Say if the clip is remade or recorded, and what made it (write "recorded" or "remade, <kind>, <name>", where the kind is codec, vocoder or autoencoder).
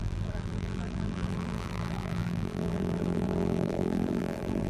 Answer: remade, vocoder, BigVGAN v2